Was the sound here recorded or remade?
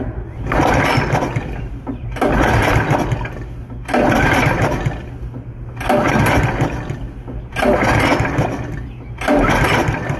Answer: recorded